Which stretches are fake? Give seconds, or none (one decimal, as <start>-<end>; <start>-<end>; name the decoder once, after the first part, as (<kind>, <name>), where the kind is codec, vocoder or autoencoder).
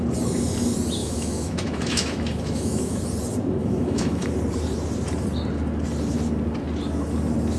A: 1.0-3.0 (autoencoder, DAC-VAE); 3.6-4.3